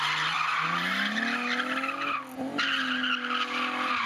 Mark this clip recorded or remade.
recorded